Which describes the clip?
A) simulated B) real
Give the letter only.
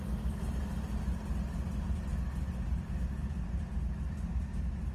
B